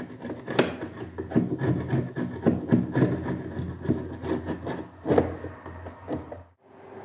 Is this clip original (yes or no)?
yes